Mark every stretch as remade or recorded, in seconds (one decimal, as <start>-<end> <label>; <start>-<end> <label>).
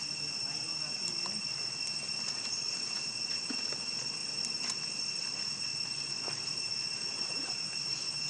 0.0-5.7 recorded; 5.7-6.2 remade; 6.2-8.3 recorded